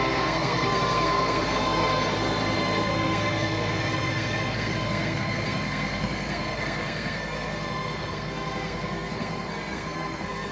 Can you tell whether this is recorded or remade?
remade